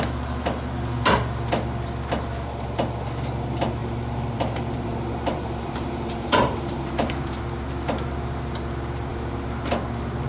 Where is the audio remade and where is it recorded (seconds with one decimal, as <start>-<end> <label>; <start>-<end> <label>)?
0.0-3.8 recorded; 3.8-7.4 remade; 7.4-9.1 recorded; 9.1-9.7 remade; 9.7-10.3 recorded